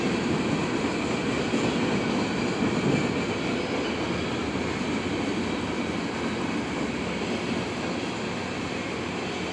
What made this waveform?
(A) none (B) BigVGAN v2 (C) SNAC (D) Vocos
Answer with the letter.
A